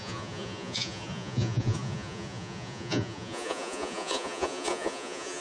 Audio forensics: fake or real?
fake